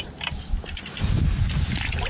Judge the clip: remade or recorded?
recorded